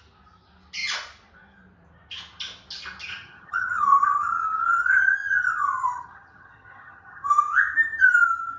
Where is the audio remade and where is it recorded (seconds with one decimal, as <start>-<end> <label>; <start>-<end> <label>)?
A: 0.0-3.1 recorded; 3.1-7.3 remade; 7.3-8.6 recorded